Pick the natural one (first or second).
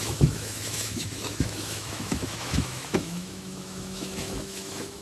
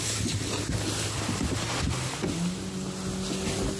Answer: second